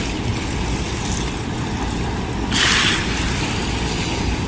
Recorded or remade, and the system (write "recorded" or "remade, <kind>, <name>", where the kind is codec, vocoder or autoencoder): recorded